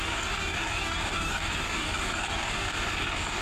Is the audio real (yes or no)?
no